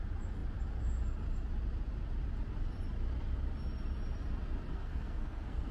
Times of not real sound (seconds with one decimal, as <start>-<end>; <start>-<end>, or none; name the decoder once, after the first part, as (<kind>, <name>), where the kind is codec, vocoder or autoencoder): 4.7-5.7 (codec, SNAC)